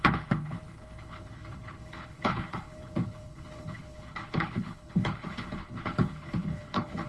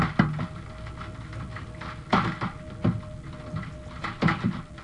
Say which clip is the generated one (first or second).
first